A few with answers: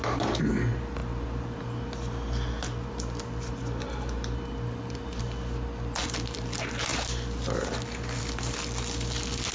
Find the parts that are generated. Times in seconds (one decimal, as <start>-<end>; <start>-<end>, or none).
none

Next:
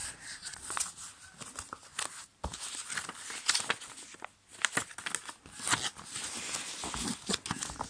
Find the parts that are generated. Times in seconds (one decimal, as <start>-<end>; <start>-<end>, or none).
0.0-0.8

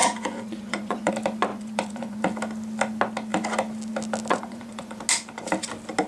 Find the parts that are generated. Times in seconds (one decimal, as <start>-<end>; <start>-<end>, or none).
0.0-1.1; 1.5-2.2; 4.3-5.0

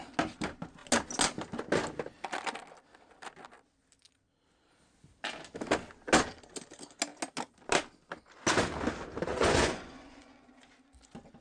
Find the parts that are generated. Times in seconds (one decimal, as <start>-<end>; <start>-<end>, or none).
9.3-10.5

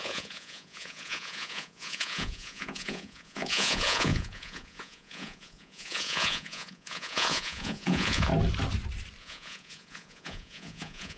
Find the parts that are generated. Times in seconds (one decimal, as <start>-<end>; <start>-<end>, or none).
0.0-8.3; 9.2-11.2